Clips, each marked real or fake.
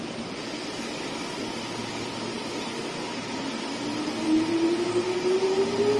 real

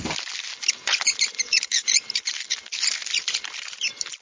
real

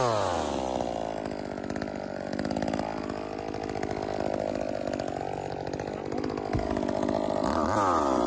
real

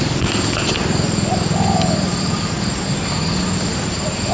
real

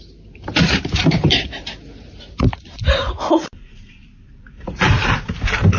fake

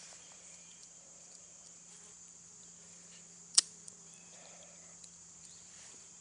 fake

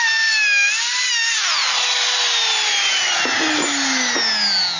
real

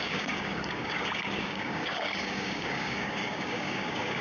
fake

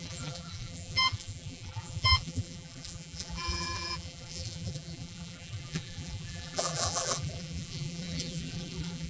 fake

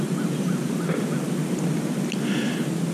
real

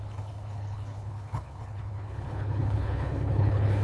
fake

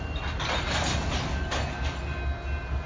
real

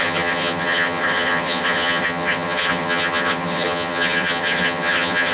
fake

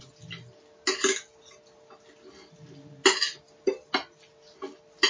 real